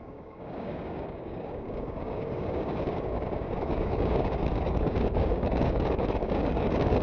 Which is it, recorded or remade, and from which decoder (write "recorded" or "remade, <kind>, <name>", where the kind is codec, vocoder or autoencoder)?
remade, codec, DAC